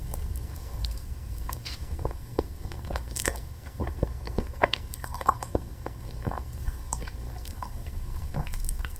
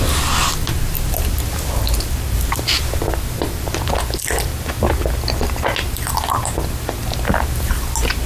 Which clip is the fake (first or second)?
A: first